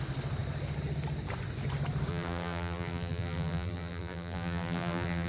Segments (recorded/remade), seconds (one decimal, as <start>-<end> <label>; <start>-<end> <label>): 0.0-2.1 recorded; 2.1-5.3 remade